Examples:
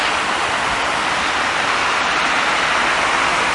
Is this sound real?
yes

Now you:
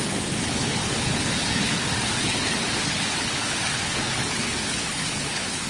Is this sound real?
no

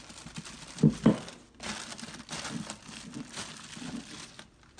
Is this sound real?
yes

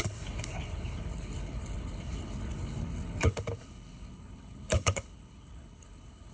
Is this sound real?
no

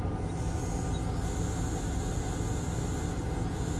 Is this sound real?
yes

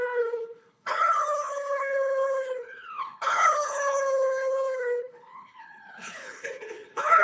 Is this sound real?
no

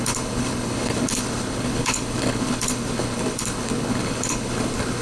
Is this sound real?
no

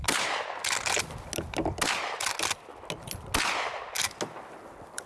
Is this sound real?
yes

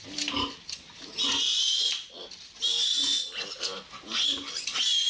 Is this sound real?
yes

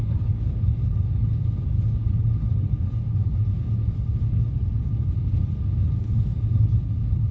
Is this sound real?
no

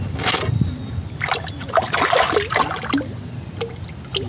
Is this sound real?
yes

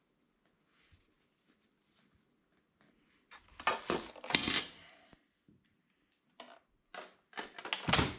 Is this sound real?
yes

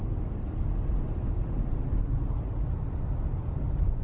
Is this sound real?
yes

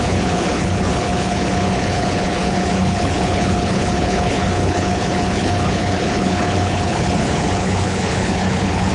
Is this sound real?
no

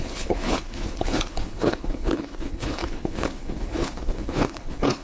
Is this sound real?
no